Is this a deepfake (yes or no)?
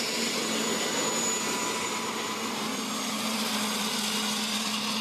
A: no